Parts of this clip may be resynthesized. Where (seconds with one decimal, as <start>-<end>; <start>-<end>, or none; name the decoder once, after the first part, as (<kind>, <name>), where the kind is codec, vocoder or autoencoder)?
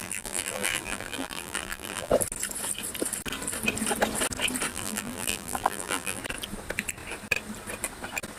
0.0-2.1 (vocoder, BigVGAN v2); 4.7-6.2